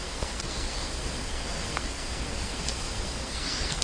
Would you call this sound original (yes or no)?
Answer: no